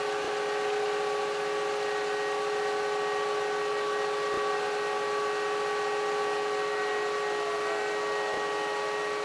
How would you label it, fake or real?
real